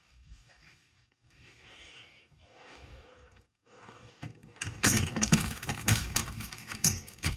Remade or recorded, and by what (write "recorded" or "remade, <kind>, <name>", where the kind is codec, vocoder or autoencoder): remade, codec, DAC